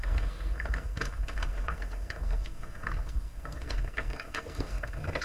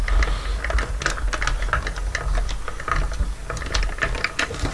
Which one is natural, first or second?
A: second